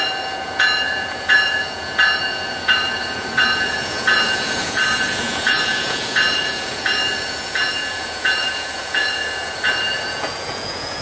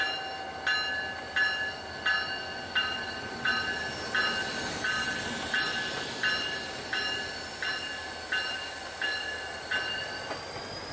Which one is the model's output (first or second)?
first